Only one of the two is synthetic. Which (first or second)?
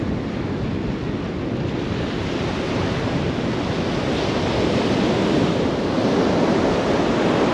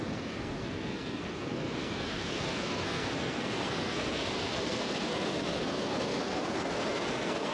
second